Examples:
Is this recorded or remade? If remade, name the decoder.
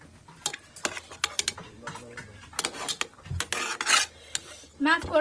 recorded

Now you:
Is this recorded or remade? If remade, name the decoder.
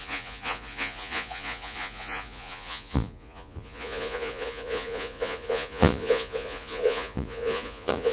remade, vocoder, Vocos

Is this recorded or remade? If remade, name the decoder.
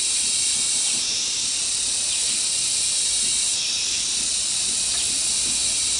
recorded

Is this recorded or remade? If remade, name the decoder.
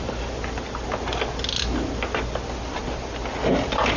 recorded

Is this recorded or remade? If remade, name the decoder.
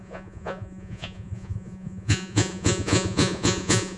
remade, vocoder, Vocos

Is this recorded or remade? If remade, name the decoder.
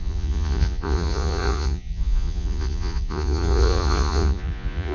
remade, vocoder, Vocos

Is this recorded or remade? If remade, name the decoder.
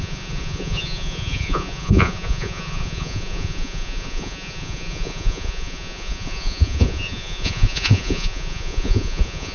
remade, vocoder, Vocos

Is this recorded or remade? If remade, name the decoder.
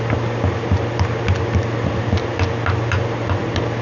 recorded